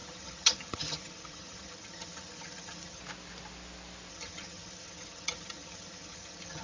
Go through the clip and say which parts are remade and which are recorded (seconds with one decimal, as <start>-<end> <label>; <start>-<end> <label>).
0.0-3.0 remade; 3.0-4.1 recorded; 4.1-6.6 remade